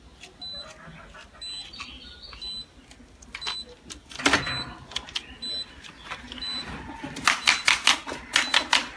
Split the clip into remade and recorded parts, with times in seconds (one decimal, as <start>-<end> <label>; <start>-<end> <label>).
0.0-9.0 recorded